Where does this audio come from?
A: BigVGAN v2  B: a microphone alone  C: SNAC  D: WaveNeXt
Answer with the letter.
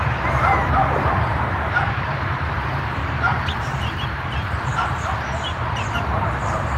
A